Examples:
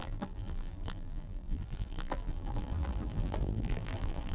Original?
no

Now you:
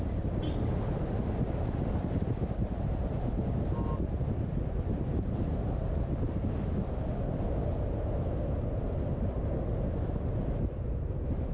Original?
yes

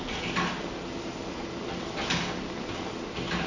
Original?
yes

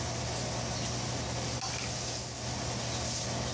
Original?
yes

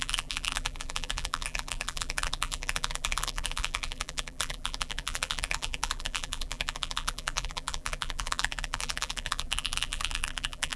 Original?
no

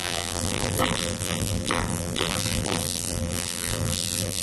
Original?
no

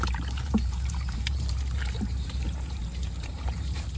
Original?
no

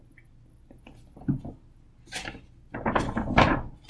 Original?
yes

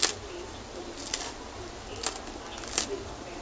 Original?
yes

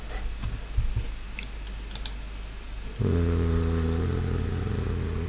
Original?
yes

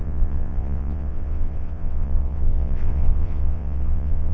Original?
no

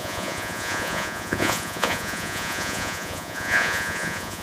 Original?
no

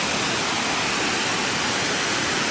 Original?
yes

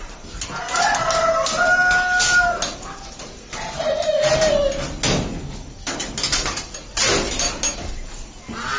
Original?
yes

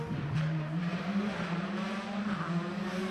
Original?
yes